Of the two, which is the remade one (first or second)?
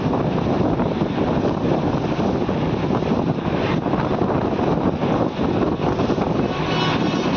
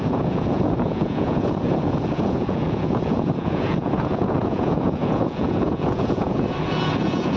second